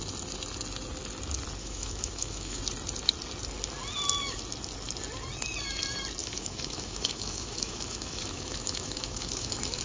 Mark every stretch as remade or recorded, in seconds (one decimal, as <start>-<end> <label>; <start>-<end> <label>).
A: 0.0-1.6 recorded; 1.6-2.6 remade; 2.6-6.2 recorded; 6.2-9.8 remade